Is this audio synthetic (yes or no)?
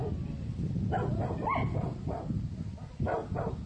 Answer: no